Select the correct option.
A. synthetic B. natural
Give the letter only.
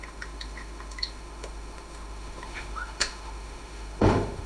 A